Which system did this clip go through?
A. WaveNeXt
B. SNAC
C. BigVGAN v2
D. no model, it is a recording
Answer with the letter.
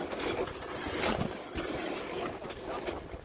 D